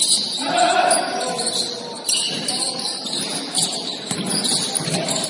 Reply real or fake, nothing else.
real